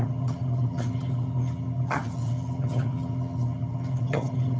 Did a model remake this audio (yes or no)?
yes